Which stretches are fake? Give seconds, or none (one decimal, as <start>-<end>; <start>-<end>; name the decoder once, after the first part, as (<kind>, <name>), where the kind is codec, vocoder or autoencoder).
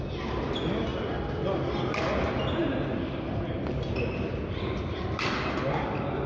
none